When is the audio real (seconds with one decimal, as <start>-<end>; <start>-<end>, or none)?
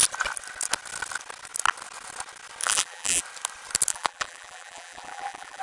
0.0-2.6; 3.2-3.9